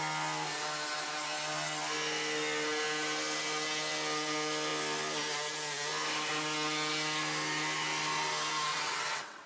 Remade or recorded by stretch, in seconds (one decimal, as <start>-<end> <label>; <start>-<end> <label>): 0.0-8.7 recorded; 8.7-9.5 remade